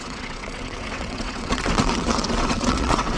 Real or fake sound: fake